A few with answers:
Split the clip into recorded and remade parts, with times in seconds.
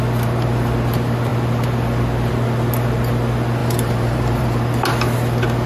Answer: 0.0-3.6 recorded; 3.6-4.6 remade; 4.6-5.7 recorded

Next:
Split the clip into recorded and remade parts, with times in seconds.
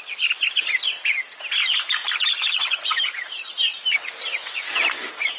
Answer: 0.0-2.0 recorded; 2.0-5.4 remade